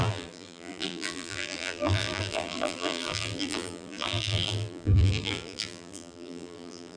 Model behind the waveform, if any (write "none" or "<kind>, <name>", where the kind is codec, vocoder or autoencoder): vocoder, BigVGAN v2